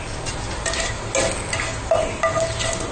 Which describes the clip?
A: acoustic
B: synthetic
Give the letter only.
A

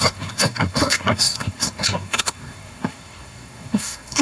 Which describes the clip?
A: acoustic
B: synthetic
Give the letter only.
B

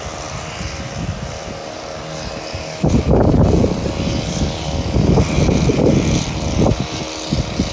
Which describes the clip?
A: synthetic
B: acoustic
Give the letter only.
B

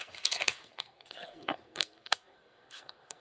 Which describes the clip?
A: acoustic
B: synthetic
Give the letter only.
B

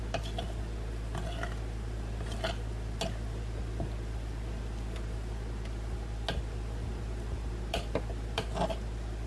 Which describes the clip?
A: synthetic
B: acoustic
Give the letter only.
B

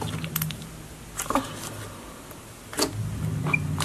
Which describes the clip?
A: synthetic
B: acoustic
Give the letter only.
B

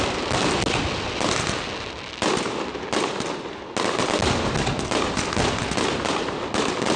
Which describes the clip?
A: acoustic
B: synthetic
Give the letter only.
A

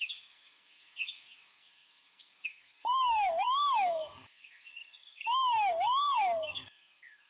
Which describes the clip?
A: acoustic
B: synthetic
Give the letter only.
B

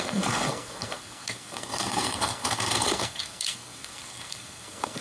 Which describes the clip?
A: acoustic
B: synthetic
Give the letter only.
B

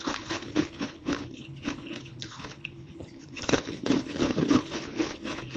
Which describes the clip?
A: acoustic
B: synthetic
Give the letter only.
B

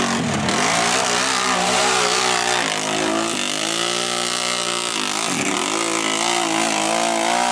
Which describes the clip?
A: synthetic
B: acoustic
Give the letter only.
B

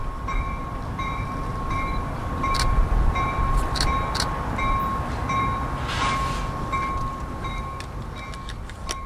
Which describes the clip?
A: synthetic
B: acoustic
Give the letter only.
B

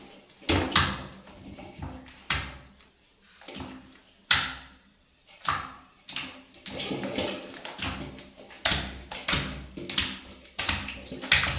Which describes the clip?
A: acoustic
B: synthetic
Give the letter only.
A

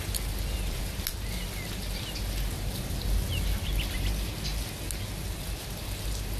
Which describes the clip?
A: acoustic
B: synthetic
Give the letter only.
A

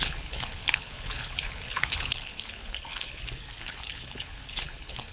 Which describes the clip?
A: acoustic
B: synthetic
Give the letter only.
B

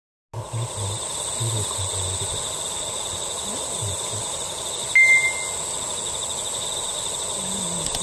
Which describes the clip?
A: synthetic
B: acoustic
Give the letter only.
B